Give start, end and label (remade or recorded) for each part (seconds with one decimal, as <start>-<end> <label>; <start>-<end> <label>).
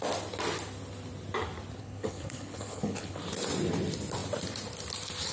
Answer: 0.0-1.8 recorded; 1.8-3.2 remade; 3.2-5.3 recorded